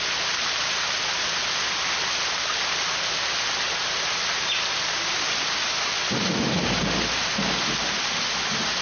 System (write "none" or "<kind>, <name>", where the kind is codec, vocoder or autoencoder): none